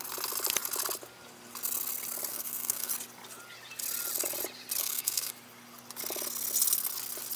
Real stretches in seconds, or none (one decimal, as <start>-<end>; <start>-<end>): 0.0-2.3; 2.9-4.8; 5.3-7.4